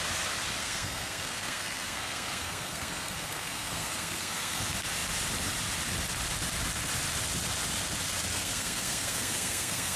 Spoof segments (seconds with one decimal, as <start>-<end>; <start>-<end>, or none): 0.6-4.6; 8.3-10.0